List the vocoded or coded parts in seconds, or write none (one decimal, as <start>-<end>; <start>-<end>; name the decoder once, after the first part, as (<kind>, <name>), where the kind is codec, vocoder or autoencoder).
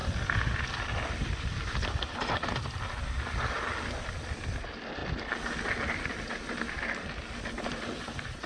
5.0-5.7 (vocoder, BigVGAN v2)